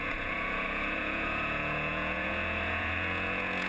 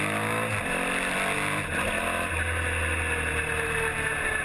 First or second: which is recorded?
second